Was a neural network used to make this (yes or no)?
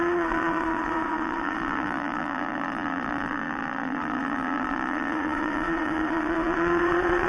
yes